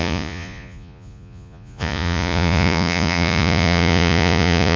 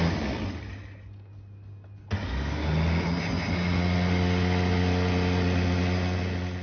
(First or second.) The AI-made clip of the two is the first